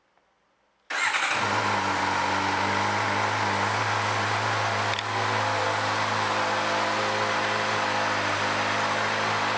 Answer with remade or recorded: recorded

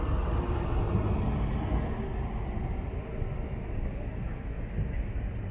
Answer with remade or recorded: recorded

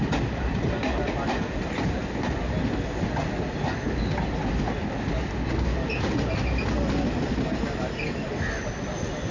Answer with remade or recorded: recorded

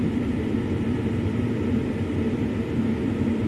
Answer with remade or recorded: recorded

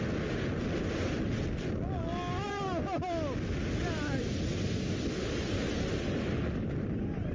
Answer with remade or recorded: recorded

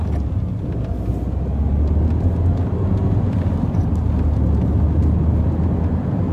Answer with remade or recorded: recorded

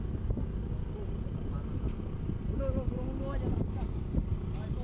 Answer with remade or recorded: recorded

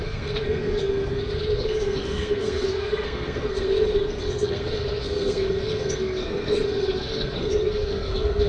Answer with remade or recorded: remade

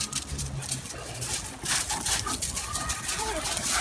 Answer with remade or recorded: recorded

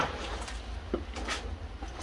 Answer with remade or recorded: recorded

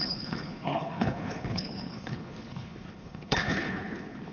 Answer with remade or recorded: remade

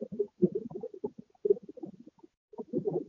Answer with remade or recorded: recorded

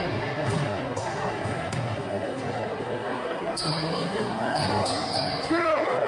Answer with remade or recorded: remade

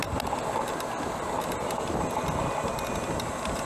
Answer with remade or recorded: recorded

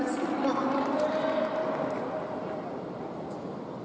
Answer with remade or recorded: recorded